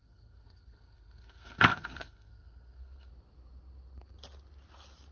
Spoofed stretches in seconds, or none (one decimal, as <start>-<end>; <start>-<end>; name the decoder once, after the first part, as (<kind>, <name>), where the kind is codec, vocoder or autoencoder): 0.0-3.1 (codec, SNAC)

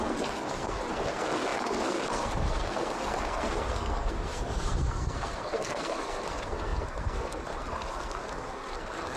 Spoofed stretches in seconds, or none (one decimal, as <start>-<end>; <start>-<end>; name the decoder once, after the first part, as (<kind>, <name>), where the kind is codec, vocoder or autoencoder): 0.0-9.2 (codec, SNAC)